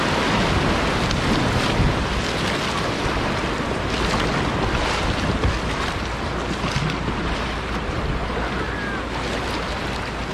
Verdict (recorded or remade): recorded